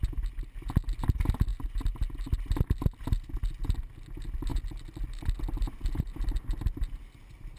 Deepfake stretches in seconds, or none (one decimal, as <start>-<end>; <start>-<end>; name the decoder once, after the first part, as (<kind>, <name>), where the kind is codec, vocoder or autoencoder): none

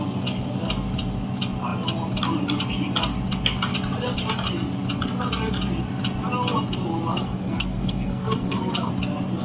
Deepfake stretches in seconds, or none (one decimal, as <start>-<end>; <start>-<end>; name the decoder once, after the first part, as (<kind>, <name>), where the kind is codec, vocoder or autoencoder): 7.1-8.9 (codec, SNAC)

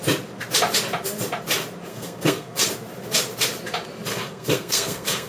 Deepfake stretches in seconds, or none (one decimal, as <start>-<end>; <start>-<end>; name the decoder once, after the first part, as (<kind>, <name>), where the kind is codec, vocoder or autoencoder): 1.9-2.7 (codec, SNAC); 4.1-5.3

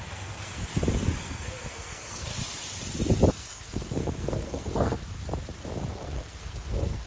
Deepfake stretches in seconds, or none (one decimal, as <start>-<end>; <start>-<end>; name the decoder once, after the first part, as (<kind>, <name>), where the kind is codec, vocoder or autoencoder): 0.0-0.7 (codec, SNAC); 1.2-2.3; 3.3-5.0; 5.9-7.1

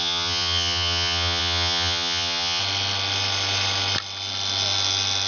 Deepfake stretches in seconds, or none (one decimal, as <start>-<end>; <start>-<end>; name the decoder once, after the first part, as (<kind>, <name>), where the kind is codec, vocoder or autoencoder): 0.0-2.6 (vocoder, HiFi-GAN)